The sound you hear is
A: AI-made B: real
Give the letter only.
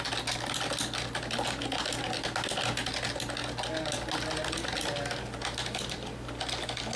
B